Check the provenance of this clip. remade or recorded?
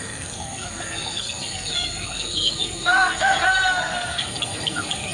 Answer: remade